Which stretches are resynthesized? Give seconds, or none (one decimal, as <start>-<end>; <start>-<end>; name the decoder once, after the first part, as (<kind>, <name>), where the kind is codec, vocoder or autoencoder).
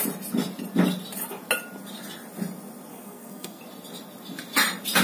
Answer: 2.9-3.6 (codec, SNAC)